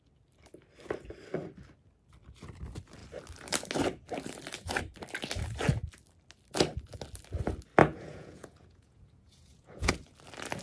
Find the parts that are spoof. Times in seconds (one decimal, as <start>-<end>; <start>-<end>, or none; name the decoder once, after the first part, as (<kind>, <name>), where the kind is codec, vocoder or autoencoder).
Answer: 7.8-9.9 (vocoder, Vocos)